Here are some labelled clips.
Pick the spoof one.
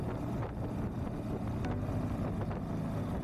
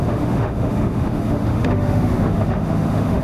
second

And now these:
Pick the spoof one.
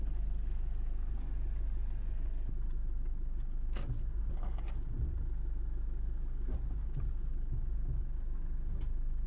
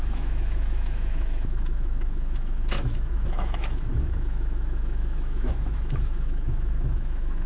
second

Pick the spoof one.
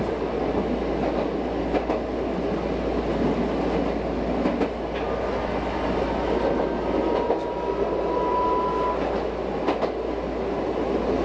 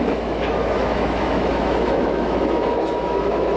second